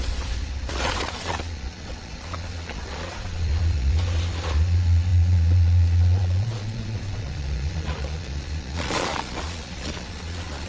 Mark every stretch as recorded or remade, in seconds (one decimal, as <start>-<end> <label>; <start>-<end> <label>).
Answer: 0.0-10.7 remade